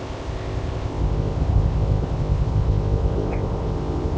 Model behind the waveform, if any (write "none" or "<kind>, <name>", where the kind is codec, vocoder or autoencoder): codec, ZipCodec